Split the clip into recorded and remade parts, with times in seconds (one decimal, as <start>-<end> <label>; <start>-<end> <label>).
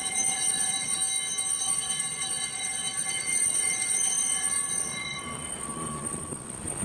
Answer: 0.0-1.0 remade; 1.0-1.6 recorded; 1.6-6.8 remade